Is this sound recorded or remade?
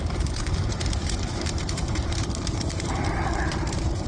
remade